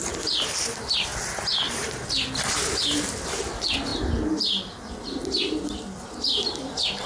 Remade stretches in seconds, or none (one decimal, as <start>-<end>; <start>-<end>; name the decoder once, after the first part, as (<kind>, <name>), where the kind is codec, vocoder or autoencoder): none